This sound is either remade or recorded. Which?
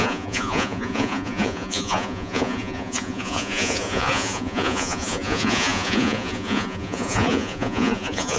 remade